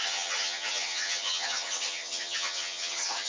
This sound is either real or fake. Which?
fake